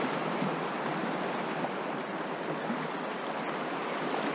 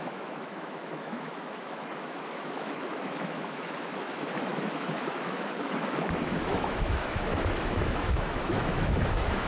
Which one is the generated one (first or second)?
second